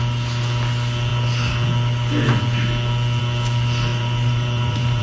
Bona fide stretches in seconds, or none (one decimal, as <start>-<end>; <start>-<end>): 0.0-3.9